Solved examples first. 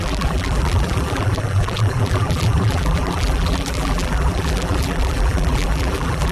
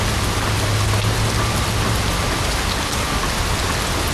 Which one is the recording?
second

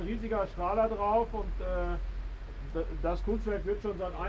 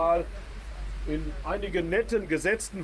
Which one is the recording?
first